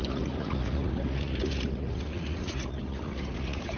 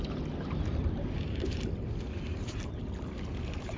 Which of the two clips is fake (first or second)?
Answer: first